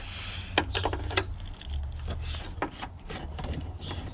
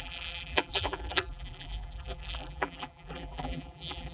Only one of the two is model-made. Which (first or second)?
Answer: second